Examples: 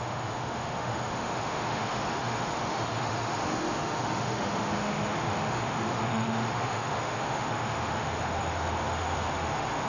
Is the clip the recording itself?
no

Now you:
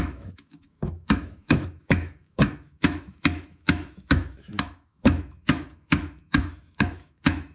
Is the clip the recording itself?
no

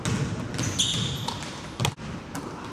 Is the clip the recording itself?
yes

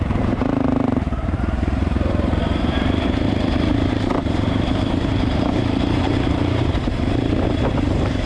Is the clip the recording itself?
no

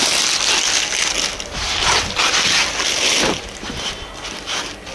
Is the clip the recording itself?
yes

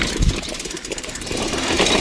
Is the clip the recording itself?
no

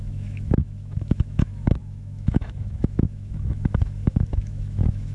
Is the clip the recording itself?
no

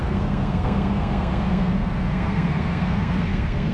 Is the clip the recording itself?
no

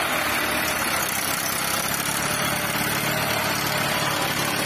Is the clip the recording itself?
yes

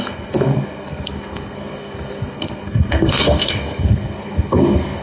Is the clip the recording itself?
no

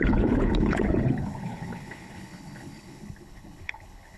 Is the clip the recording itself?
no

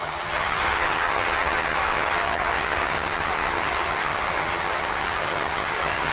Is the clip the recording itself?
no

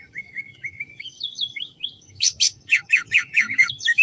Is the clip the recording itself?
no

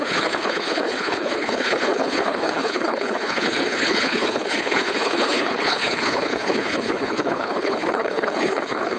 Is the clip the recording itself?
no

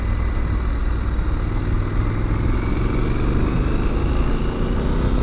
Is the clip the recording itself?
yes